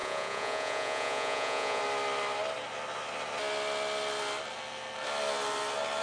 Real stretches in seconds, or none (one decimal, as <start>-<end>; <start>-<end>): 1.8-6.0